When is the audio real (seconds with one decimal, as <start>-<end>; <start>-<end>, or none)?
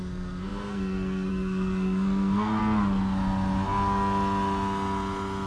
2.6-5.5